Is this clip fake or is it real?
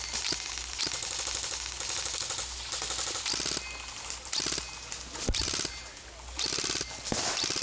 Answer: real